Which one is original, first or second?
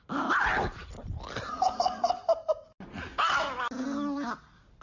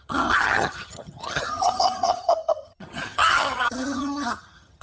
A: first